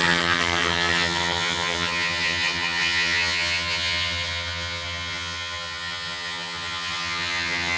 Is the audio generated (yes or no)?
yes